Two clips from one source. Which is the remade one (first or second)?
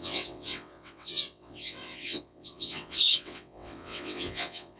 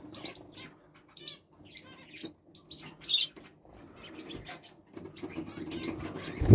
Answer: first